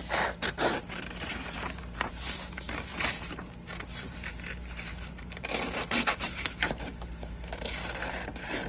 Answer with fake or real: fake